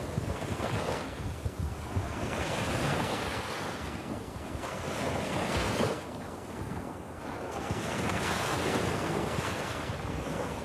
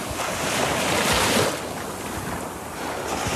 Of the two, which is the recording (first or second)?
second